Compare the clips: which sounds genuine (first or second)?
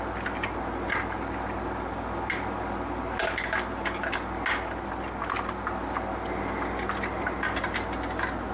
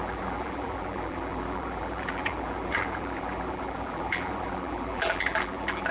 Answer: first